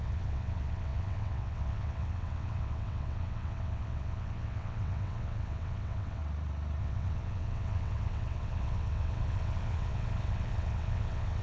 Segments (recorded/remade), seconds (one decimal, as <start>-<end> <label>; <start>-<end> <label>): 0.0-6.2 remade; 6.2-6.8 recorded; 6.8-11.4 remade